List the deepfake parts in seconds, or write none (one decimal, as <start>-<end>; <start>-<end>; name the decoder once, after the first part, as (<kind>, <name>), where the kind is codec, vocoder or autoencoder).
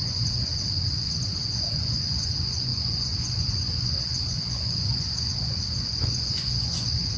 0.0-0.5 (vocoder, Vocos); 1.3-7.2